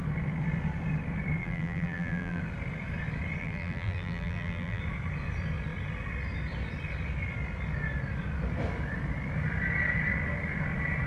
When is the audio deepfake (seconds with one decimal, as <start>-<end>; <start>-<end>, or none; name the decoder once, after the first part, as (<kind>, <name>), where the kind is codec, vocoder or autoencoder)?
1.4-2.4 (vocoder, BigVGAN v2); 3.4-4.8